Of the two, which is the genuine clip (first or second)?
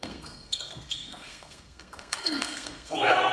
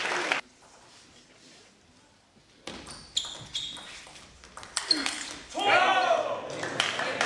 second